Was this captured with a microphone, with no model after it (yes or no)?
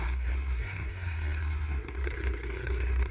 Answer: no